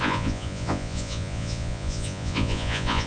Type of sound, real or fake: fake